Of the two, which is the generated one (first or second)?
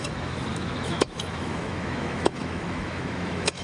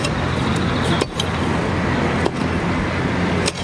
first